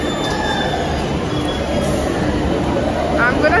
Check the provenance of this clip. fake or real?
real